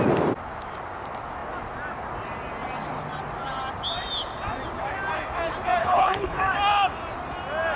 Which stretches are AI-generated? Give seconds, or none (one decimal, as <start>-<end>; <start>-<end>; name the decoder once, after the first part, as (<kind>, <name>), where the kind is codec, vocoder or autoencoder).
5.8-6.4 (codec, HILCodec)